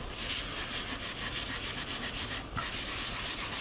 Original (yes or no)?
yes